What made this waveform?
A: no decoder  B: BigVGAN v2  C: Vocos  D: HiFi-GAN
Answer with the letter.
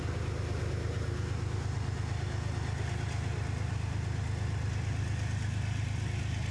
A